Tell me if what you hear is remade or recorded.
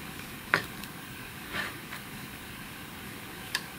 remade